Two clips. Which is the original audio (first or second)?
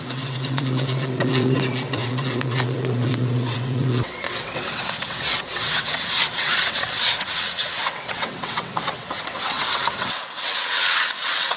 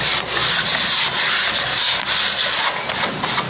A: second